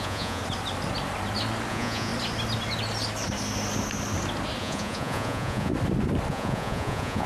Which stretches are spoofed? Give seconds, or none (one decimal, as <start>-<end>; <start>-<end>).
0.0-0.4; 1.7-2.1; 4.6-5.7; 6.3-7.3